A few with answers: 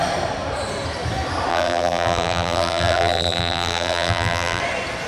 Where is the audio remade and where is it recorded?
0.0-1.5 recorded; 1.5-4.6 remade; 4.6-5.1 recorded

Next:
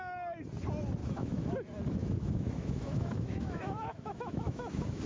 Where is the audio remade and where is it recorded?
0.0-1.0 recorded; 1.0-1.5 remade; 1.5-2.0 recorded; 2.0-5.1 remade

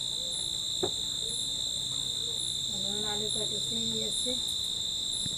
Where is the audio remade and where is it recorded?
0.0-5.4 recorded